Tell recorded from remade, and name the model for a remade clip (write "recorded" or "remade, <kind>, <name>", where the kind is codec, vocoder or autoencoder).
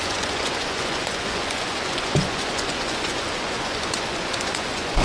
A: remade, vocoder, Vocos